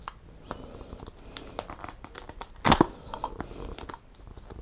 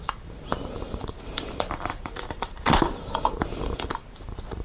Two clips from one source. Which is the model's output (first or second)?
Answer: second